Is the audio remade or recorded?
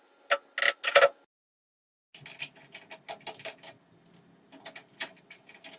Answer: recorded